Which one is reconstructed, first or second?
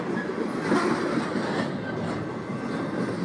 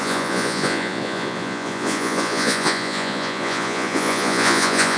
second